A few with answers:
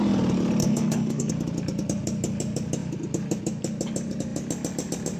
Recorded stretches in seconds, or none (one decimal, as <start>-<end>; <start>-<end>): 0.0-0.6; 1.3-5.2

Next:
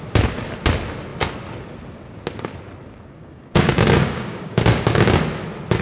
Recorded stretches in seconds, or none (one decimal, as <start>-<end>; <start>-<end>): 0.0-3.2; 5.2-5.8

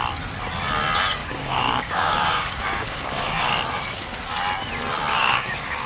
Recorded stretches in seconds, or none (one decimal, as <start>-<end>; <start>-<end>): 0.0-1.2; 3.5-5.1

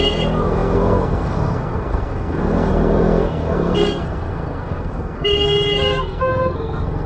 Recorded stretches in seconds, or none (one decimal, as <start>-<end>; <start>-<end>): none

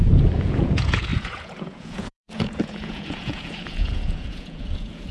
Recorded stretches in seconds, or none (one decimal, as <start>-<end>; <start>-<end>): none

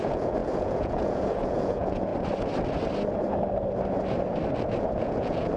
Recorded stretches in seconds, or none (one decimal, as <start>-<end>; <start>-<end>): 2.1-4.8

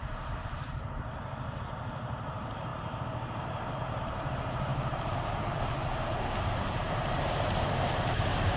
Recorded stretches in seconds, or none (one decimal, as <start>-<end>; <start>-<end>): none

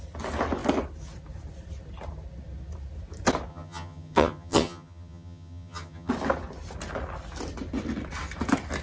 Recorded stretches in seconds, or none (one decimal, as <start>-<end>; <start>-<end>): 0.0-3.5; 6.1-8.8